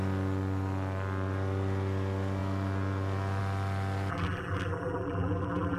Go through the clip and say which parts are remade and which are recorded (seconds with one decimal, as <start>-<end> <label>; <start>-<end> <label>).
0.0-4.1 recorded; 4.1-5.8 remade